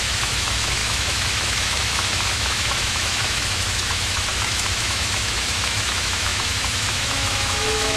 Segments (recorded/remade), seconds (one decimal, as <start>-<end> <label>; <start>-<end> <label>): 0.0-8.0 remade